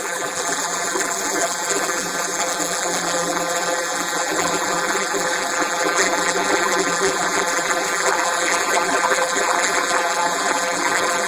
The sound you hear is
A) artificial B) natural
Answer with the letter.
A